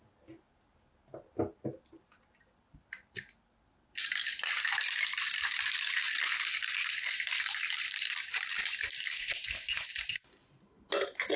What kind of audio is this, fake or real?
real